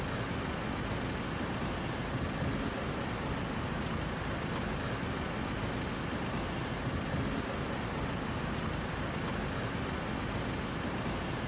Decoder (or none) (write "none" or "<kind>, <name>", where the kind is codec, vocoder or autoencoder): none